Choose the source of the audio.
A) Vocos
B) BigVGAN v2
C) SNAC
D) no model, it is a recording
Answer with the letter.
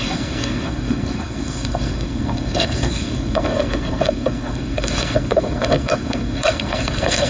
C